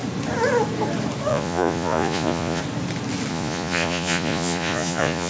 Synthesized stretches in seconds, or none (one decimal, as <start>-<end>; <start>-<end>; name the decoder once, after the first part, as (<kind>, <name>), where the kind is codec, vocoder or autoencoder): 1.3-2.6 (vocoder, Vocos); 3.3-5.3